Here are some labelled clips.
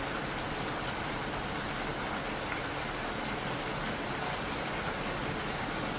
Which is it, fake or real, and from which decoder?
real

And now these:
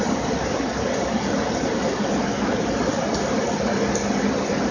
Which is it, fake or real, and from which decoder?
real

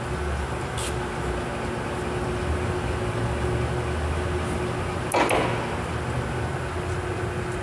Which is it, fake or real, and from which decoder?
real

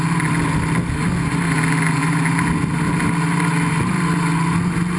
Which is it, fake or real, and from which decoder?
real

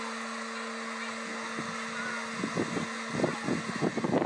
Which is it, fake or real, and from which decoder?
real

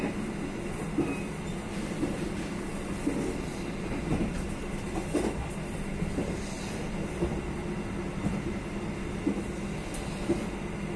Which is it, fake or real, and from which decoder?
real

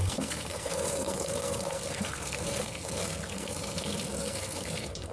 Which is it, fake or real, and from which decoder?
fake, codec, SNAC